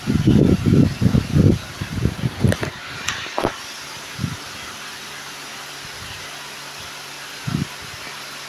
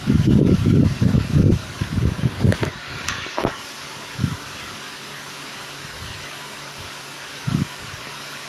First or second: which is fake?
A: second